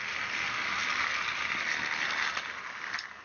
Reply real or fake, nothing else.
real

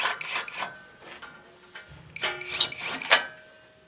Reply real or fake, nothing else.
real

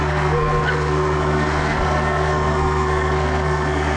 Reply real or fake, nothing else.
fake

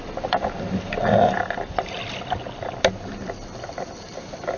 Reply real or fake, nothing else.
real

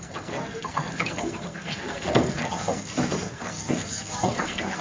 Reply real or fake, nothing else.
fake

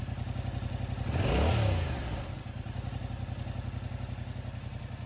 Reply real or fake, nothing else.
real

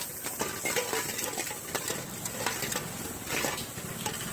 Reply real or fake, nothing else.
real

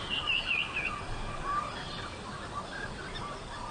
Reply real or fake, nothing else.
real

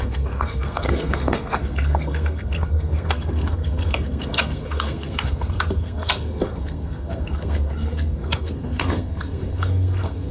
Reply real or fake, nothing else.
fake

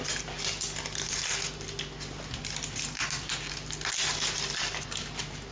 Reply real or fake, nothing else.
real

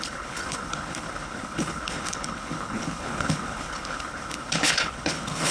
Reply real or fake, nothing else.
fake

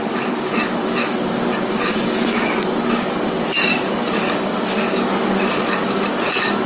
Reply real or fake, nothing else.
fake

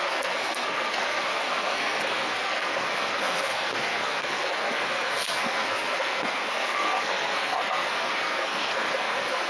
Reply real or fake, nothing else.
fake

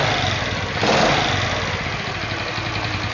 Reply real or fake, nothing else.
real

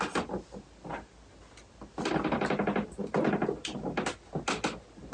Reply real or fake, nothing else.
real